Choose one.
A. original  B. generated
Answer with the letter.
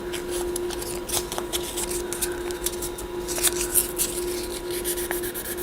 A